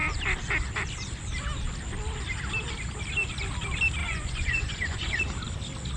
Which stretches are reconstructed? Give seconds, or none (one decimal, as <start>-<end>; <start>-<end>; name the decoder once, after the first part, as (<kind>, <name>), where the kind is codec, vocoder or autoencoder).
4.0-5.2 (vocoder, Vocos)